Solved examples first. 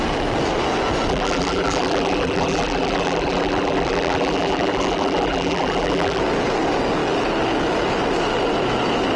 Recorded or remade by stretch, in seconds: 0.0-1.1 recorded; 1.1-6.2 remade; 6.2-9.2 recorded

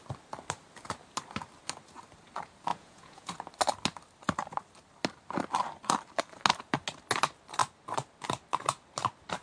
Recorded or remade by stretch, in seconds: 0.0-2.7 recorded; 2.7-3.3 remade; 3.3-9.4 recorded

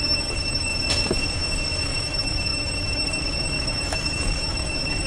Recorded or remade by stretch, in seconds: 0.0-0.7 remade; 0.7-1.8 recorded; 1.8-5.1 remade

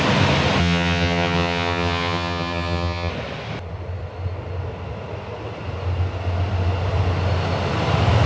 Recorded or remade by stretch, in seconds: 0.0-0.6 recorded; 0.6-3.1 remade; 3.1-8.3 recorded

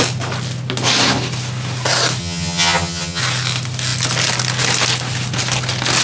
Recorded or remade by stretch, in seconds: 0.0-2.2 recorded; 2.2-3.2 remade; 3.2-6.0 recorded

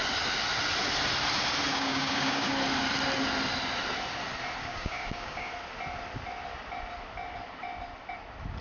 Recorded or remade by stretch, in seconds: 0.0-1.7 recorded; 1.7-2.5 remade; 2.5-4.6 recorded; 4.6-5.5 remade; 5.5-8.6 recorded

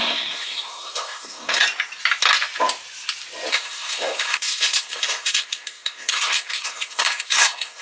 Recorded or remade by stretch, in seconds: 0.0-1.6 remade; 1.6-3.5 recorded; 3.5-7.8 remade

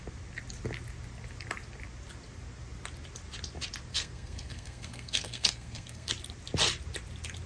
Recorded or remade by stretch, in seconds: 0.0-3.9 recorded; 3.9-6.1 remade; 6.1-7.5 recorded